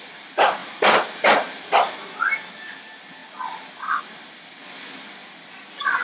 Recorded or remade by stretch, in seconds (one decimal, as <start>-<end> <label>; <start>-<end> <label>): 0.0-6.0 recorded